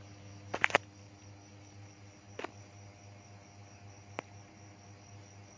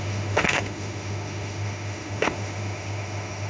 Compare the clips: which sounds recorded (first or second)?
first